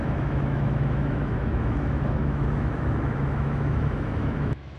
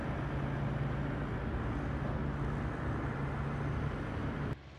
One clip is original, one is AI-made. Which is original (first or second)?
second